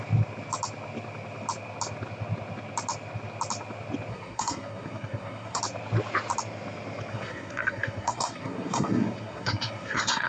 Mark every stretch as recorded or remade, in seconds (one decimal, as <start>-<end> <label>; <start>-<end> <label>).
0.0-4.1 recorded; 4.1-5.6 remade; 5.6-7.1 recorded; 7.1-10.3 remade